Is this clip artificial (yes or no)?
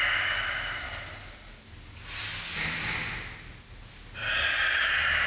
no